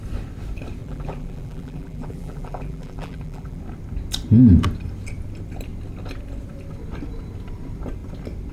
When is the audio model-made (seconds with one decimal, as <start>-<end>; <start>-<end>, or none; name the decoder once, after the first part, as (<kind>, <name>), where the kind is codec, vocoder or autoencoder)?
0.8-3.6 (vocoder, BigVGAN v2)